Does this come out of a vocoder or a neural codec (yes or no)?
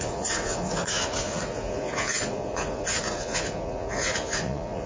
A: yes